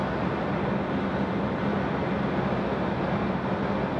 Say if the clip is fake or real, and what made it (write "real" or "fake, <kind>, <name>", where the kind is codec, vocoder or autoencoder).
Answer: real